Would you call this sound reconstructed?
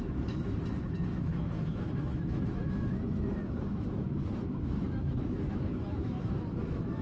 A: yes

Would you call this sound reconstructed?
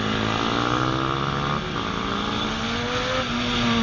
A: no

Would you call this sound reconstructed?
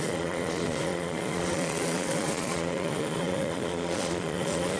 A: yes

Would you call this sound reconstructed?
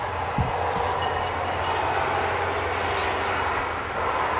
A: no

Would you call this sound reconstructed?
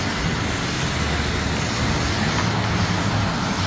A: no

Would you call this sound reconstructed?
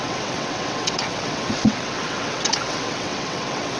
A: yes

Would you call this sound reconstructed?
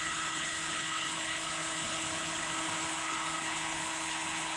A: yes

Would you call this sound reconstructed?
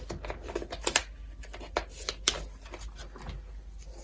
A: no